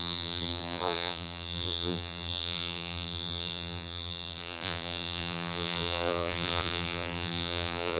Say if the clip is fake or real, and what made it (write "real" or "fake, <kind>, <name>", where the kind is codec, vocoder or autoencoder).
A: fake, vocoder, BigVGAN v2